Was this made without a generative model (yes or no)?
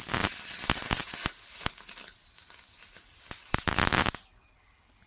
yes